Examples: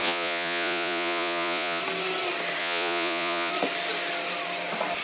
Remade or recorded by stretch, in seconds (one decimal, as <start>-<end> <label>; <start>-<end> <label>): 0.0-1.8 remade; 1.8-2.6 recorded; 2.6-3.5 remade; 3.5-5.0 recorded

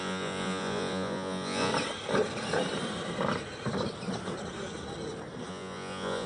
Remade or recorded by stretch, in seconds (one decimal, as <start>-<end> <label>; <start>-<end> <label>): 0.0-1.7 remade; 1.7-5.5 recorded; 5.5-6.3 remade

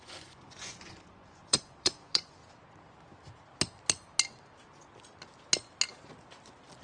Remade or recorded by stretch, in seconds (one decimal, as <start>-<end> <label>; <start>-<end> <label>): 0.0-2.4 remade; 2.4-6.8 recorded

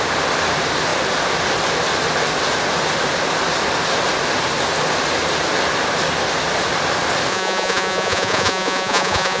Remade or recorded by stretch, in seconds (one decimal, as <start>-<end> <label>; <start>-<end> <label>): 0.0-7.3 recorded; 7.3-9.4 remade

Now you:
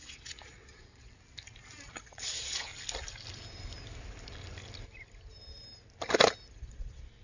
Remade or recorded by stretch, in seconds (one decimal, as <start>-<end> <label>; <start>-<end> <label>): 0.0-1.1 remade; 1.1-2.0 recorded; 2.0-2.7 remade; 2.7-6.6 recorded; 6.6-7.2 remade

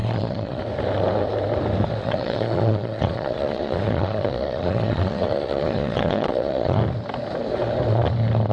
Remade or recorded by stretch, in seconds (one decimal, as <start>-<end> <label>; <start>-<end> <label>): 0.0-0.6 remade; 0.6-2.0 recorded; 2.0-6.8 remade; 6.8-8.5 recorded